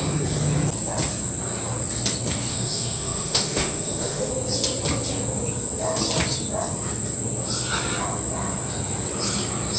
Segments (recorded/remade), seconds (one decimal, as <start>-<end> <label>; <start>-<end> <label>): 0.0-2.5 recorded; 2.5-4.3 remade; 4.3-9.8 recorded